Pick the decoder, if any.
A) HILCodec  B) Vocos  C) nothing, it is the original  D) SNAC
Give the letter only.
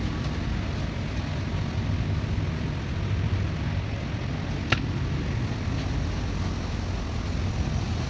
C